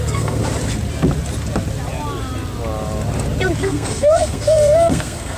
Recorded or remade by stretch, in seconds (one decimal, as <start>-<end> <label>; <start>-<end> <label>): 0.0-0.4 remade; 0.4-3.6 recorded; 3.6-5.4 remade